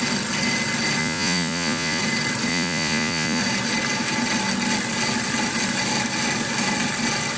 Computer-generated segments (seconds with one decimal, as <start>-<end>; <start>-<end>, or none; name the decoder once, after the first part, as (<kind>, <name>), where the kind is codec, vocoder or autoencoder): 1.0-2.0 (vocoder, Vocos); 2.5-3.4